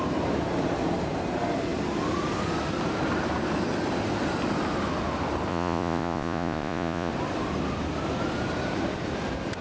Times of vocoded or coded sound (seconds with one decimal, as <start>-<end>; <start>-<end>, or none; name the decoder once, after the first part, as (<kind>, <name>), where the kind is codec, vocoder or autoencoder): 5.5-7.1 (vocoder, Vocos)